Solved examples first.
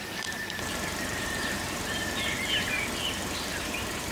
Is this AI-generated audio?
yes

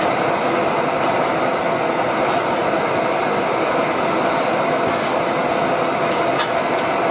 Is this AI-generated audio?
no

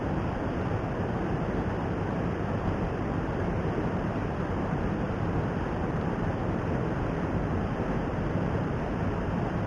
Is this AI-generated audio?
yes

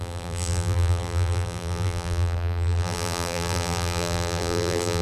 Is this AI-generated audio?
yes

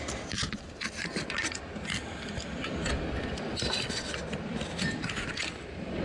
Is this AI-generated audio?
yes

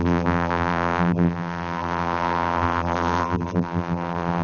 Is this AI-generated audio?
yes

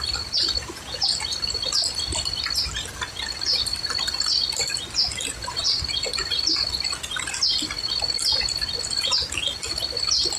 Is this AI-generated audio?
no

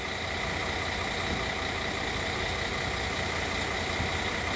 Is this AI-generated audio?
no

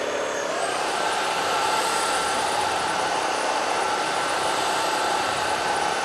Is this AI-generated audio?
yes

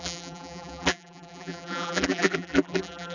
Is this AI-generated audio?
yes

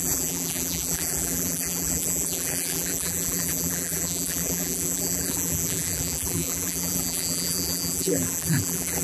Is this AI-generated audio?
yes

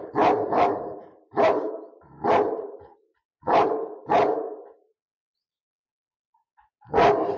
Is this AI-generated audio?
yes